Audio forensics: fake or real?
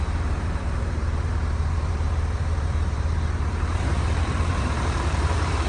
fake